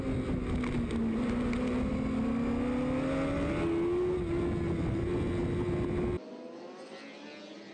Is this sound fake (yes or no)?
no